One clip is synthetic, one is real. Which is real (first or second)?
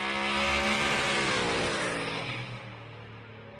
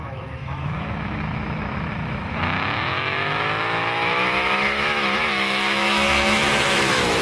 first